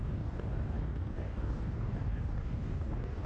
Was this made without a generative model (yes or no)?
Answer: no